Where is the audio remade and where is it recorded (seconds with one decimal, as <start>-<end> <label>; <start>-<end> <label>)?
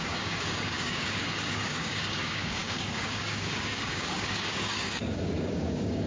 0.0-6.1 remade